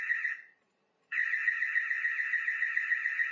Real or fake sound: fake